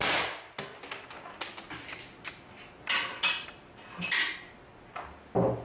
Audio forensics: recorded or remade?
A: recorded